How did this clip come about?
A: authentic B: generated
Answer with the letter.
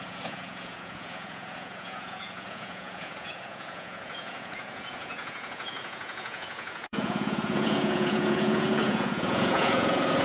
B